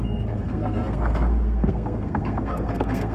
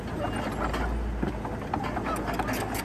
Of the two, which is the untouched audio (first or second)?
second